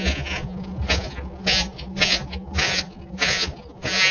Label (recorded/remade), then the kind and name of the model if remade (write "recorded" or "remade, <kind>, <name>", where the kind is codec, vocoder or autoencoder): remade, vocoder, Vocos